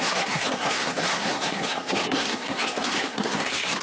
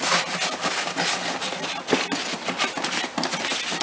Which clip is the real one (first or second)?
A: second